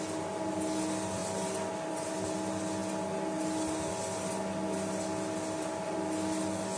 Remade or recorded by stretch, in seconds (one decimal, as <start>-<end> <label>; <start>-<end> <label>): 0.0-6.8 recorded